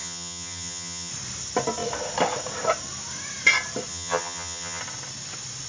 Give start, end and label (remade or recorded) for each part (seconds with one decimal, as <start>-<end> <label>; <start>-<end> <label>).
0.0-1.1 remade; 1.1-3.9 recorded; 3.9-4.8 remade; 4.8-5.7 recorded